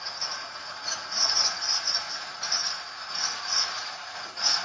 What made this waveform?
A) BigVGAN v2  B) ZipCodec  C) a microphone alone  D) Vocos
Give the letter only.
D